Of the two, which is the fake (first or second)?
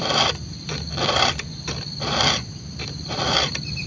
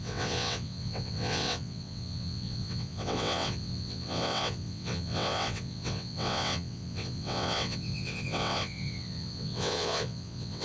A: second